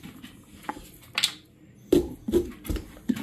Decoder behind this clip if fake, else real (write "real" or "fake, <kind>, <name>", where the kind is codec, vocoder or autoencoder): real